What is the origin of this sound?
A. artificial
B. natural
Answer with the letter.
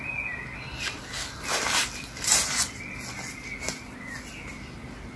B